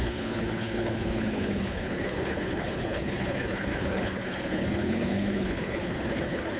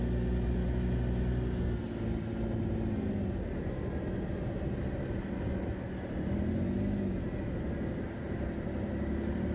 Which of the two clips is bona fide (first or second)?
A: second